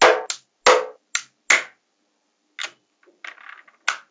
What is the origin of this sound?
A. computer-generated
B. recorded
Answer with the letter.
B